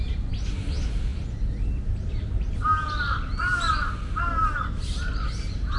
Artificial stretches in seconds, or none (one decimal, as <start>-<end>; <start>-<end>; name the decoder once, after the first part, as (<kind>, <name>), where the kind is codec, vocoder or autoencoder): none